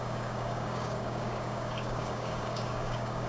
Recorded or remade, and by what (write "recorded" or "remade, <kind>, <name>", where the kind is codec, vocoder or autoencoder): remade, codec, DAC